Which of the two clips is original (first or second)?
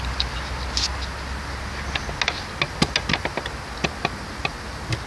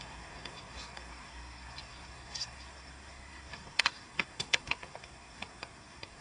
first